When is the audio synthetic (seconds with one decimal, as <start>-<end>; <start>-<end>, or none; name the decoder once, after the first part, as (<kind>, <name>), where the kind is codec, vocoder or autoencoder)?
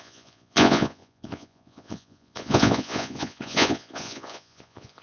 0.0-5.0 (vocoder, Vocos)